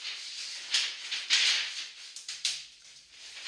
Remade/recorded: recorded